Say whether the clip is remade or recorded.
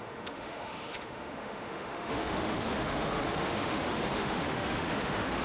remade